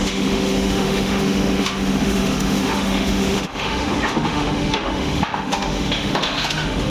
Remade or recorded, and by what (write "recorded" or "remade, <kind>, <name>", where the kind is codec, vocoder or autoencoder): remade, autoencoder, DAC-VAE